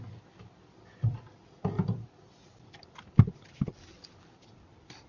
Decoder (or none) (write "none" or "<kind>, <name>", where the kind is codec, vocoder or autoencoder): none